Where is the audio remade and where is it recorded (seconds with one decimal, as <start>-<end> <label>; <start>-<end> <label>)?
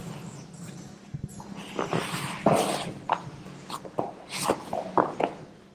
0.0-5.7 recorded